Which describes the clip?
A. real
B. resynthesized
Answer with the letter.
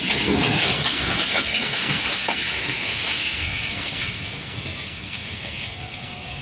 B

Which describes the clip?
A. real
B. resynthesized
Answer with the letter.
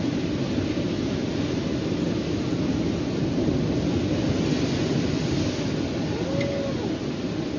A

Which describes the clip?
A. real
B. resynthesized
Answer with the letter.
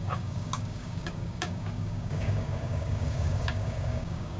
B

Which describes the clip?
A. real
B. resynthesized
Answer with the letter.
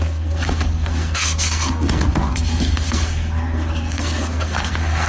B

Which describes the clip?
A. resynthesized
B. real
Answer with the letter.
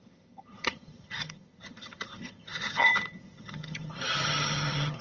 A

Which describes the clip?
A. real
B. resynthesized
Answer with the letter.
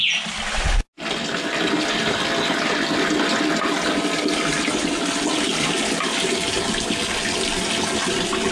A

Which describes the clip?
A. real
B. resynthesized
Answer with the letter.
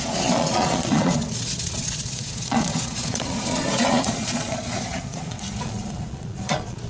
B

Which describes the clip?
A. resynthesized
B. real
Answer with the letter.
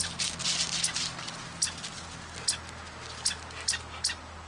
B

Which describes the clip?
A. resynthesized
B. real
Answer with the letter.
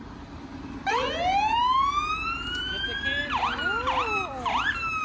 B